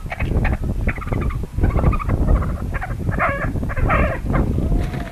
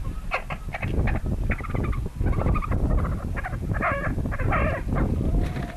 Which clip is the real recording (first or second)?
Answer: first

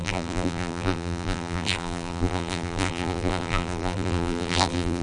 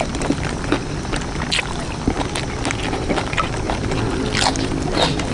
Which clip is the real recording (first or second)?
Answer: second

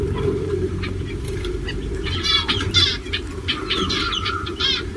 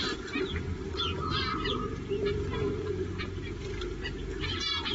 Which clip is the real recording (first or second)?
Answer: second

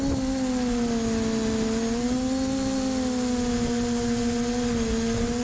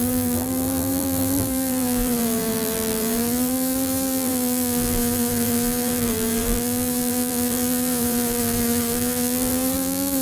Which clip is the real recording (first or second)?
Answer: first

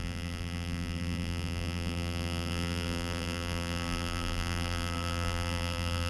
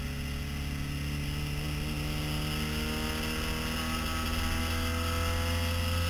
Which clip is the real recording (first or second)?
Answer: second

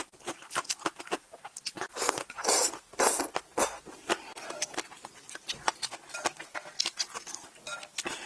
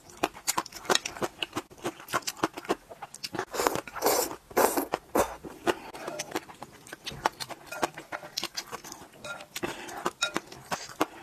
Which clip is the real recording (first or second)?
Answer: first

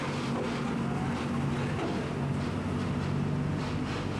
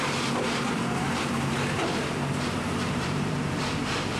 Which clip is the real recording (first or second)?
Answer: first